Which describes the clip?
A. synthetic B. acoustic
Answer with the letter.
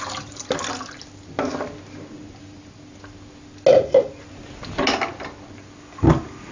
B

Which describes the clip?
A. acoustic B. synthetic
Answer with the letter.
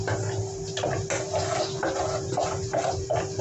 A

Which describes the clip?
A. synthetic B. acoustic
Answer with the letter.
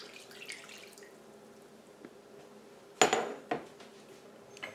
B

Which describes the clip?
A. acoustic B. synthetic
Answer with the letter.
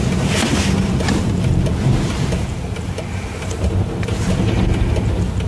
A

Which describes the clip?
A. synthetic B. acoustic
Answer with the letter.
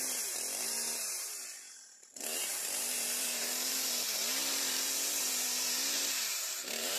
A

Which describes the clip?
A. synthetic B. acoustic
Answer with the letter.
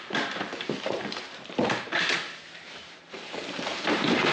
A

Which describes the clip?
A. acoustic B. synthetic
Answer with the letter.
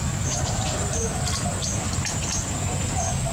A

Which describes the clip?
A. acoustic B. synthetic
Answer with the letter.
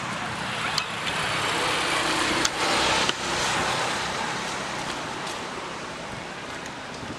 A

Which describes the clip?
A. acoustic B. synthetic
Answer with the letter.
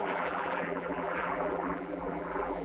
B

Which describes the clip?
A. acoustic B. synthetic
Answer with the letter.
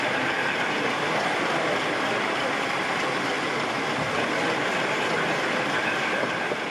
B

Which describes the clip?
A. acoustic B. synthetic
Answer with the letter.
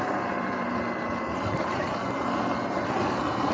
B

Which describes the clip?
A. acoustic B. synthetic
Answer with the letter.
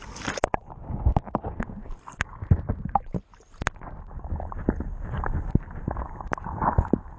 A